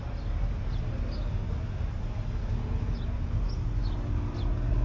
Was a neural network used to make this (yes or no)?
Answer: no